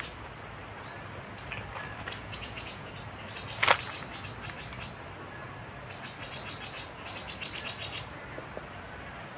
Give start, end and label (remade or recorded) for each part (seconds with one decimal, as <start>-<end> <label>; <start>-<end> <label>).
0.0-2.2 recorded; 2.2-2.9 remade; 2.9-9.4 recorded